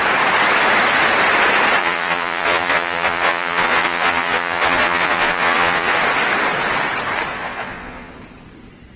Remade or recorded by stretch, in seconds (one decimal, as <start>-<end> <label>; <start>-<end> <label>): 0.0-1.8 recorded; 1.8-6.0 remade; 6.0-7.3 recorded; 7.3-8.1 remade; 8.1-9.0 recorded